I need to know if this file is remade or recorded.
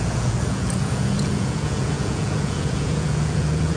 remade